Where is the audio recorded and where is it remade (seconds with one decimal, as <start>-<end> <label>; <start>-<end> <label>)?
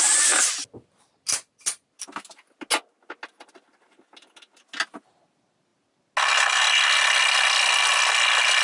0.0-8.6 recorded